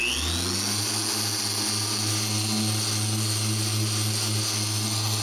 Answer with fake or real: real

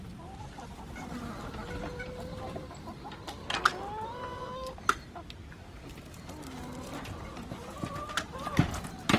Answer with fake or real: real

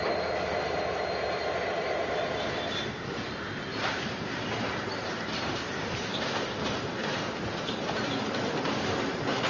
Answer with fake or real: fake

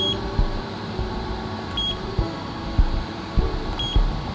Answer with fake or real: fake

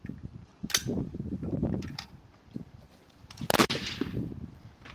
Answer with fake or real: fake